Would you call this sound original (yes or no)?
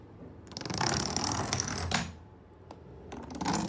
yes